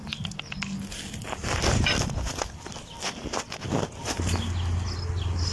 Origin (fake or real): real